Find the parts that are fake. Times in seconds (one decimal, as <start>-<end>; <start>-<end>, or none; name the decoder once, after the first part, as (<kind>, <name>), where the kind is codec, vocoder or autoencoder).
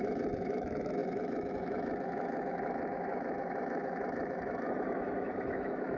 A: 0.0-6.0 (autoencoder, DAC-VAE)